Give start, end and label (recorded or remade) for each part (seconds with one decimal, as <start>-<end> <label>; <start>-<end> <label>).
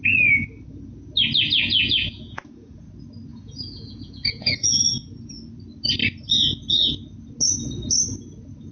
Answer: 0.0-1.6 recorded; 1.6-2.9 remade; 2.9-3.3 recorded; 3.3-4.8 remade; 4.8-8.7 recorded